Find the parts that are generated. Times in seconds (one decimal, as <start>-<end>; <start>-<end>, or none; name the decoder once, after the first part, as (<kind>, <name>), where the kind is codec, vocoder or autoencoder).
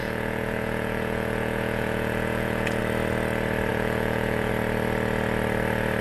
0.0-2.8 (vocoder, Vocos); 3.7-4.5